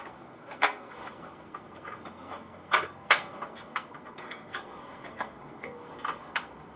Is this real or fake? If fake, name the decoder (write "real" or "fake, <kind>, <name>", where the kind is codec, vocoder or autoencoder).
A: fake, codec, SNAC